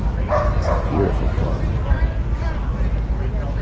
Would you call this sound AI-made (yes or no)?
no